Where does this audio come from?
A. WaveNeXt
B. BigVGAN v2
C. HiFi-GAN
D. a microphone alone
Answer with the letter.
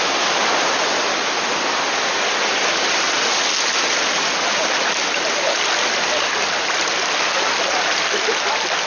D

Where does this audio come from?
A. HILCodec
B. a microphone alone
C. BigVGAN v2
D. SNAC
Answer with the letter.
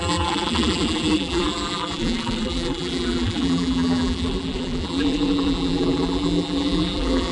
C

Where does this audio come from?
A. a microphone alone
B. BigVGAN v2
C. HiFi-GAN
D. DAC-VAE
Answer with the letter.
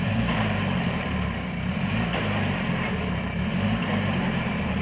B